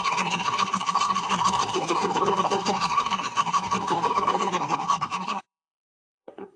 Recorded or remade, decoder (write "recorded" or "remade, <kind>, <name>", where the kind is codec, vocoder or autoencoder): remade, codec, SNAC